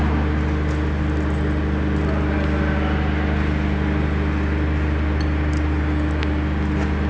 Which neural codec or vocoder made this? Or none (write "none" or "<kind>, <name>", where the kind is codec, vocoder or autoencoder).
none